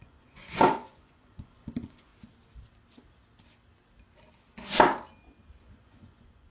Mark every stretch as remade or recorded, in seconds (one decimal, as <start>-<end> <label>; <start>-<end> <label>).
0.0-2.1 remade; 2.1-5.6 recorded; 5.6-6.5 remade